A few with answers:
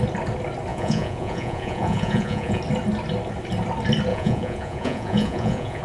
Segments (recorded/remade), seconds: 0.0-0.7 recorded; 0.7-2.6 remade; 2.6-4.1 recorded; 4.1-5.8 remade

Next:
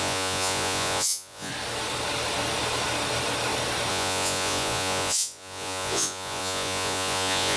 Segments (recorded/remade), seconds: 0.0-1.5 remade; 1.5-3.9 recorded; 3.9-7.6 remade

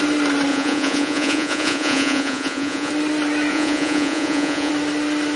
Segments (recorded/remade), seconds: 0.0-0.5 recorded; 0.5-2.9 remade; 2.9-3.5 recorded; 3.5-4.7 remade; 4.7-5.4 recorded

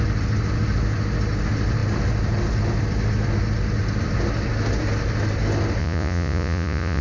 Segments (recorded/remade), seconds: 0.0-5.8 recorded; 5.8-7.0 remade

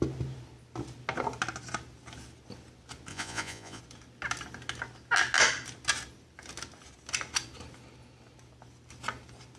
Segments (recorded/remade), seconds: 0.0-3.1 recorded; 3.1-3.8 remade; 3.8-9.6 recorded

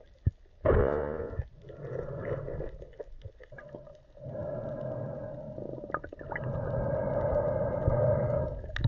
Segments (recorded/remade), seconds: 0.0-0.8 recorded; 0.8-1.3 remade; 1.3-8.9 recorded

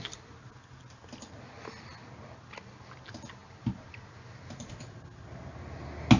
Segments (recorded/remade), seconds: 0.0-6.2 recorded

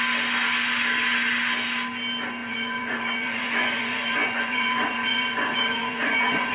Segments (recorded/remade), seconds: 0.0-2.4 recorded; 2.4-6.5 remade